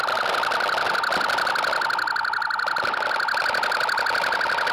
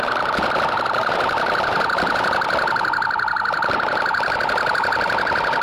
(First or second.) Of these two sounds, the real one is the first